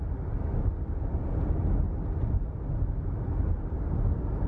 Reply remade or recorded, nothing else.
recorded